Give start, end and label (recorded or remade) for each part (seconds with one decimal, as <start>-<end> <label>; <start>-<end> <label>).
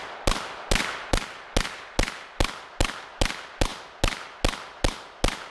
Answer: 0.0-5.5 recorded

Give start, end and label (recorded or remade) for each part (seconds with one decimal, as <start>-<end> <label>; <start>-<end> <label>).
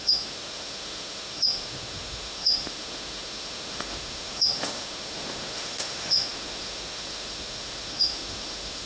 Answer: 0.0-8.9 remade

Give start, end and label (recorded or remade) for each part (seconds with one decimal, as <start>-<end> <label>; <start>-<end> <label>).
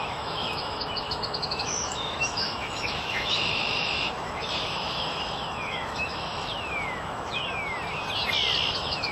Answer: 0.0-7.4 remade; 7.4-8.7 recorded; 8.7-9.1 remade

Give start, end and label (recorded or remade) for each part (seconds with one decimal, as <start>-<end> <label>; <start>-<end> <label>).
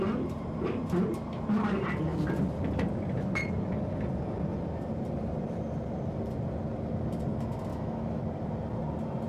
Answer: 0.0-7.7 recorded; 7.7-8.2 remade; 8.2-9.3 recorded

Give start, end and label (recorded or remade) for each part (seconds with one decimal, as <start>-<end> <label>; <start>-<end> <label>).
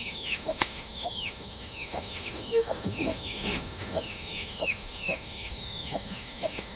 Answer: 0.0-6.8 remade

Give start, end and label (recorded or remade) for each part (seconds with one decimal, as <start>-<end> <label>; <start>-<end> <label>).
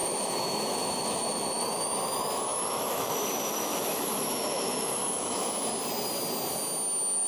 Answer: 0.0-5.7 remade; 5.7-7.3 recorded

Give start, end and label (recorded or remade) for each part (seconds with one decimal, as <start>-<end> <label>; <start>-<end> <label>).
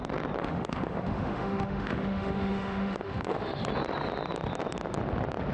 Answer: 0.0-0.4 recorded; 0.4-3.7 remade; 3.7-5.5 recorded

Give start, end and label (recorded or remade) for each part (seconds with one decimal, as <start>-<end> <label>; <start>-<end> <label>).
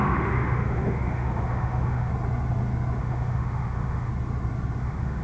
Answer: 0.0-2.1 remade; 2.1-3.0 recorded; 3.0-4.1 remade; 4.1-4.8 recorded; 4.8-5.2 remade